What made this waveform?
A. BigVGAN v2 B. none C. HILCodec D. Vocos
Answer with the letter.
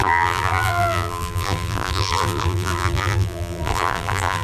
A